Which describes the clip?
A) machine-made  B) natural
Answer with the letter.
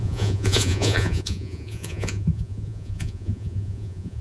A